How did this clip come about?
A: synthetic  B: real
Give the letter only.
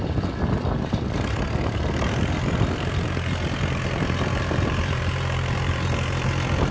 A